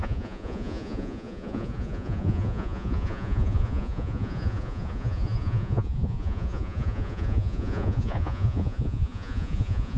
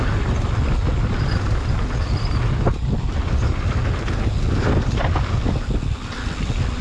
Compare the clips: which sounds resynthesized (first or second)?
first